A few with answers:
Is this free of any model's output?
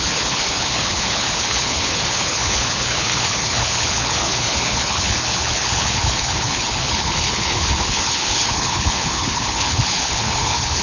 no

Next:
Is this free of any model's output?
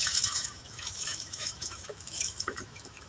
no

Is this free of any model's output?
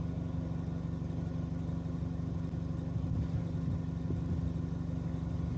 yes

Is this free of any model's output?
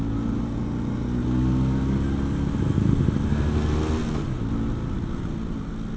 yes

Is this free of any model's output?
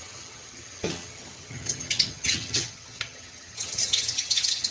no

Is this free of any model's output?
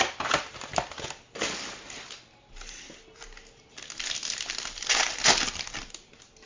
yes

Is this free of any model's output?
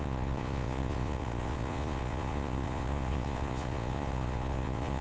no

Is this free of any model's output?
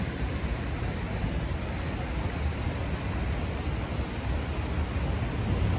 yes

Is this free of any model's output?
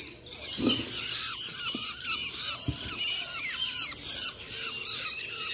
yes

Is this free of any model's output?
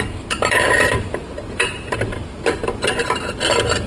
no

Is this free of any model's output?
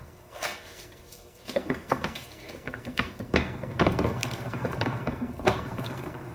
no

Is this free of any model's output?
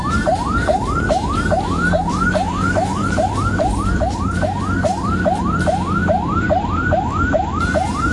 no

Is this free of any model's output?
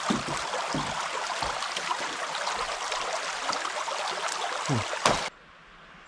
yes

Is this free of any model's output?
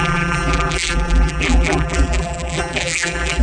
no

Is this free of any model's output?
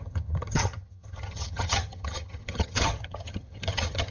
no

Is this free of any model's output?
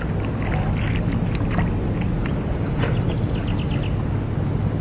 yes